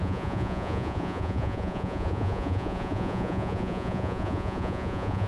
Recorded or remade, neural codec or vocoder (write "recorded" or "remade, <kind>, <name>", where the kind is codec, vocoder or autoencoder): remade, vocoder, Vocos